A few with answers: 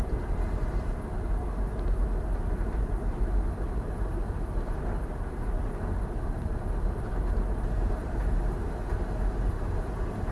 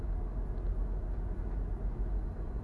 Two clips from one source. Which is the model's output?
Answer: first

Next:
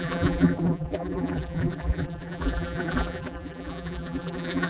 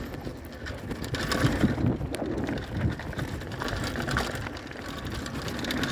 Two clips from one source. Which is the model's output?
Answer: first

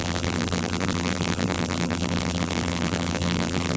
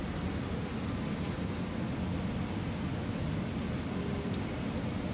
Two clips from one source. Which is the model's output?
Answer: first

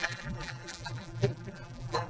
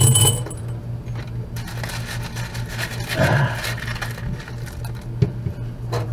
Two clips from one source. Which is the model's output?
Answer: first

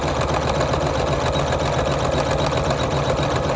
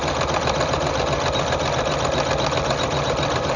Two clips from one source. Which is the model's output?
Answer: second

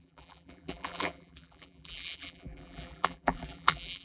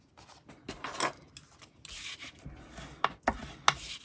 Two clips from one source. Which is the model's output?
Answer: first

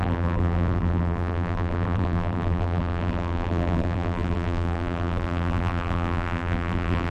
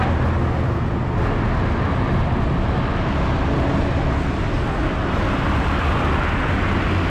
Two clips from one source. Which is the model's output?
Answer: first